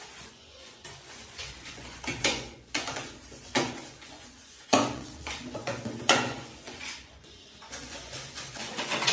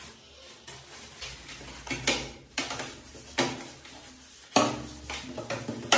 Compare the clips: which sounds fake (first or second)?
first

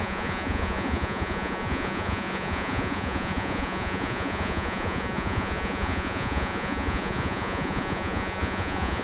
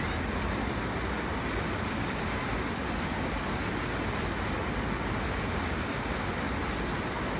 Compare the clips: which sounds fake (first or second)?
first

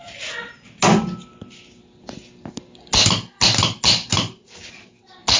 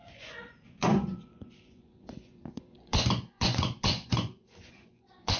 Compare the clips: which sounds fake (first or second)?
second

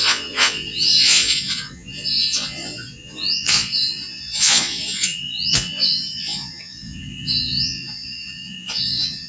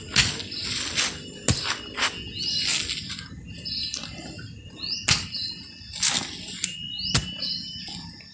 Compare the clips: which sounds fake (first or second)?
first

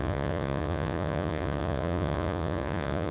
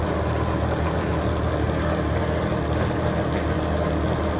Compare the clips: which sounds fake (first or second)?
first